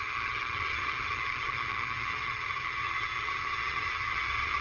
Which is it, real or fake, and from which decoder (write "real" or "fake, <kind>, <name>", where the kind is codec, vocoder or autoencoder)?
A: fake, vocoder, HiFi-GAN